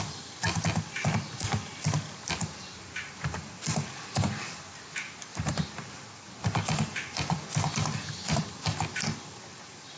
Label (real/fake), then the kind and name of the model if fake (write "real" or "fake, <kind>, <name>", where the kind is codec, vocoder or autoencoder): real